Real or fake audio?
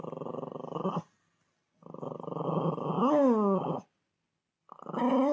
real